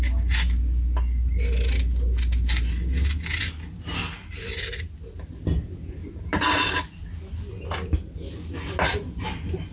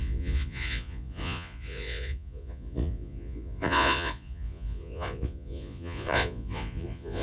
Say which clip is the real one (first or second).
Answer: first